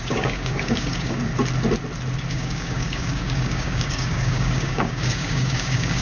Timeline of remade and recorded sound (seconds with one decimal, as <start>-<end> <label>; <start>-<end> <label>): 0.0-1.3 remade; 1.3-2.3 recorded; 2.3-6.0 remade